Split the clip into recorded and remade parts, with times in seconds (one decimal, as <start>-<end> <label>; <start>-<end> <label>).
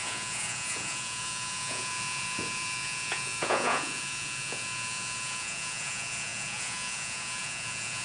0.0-8.0 remade